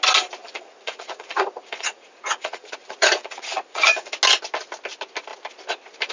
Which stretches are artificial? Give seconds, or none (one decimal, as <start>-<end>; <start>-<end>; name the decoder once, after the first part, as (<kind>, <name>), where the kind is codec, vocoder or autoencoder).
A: 0.4-4.1 (vocoder, Vocos)